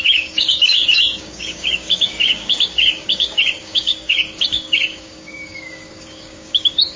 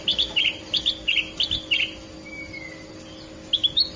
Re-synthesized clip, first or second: first